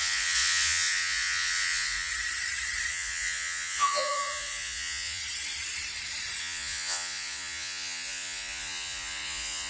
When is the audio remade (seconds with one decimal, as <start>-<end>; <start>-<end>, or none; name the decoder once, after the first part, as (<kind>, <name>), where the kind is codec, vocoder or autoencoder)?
0.0-2.1 (vocoder, Vocos); 2.9-5.2; 6.4-9.7